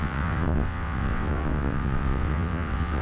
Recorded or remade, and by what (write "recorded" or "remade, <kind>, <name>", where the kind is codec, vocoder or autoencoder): remade, vocoder, WaveNeXt